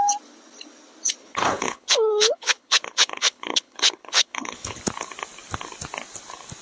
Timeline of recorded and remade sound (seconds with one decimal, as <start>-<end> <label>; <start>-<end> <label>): 0.0-1.2 recorded; 1.2-4.8 remade; 4.8-6.6 recorded